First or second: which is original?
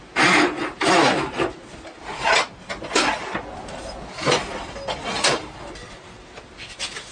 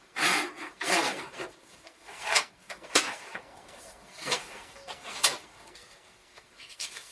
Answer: first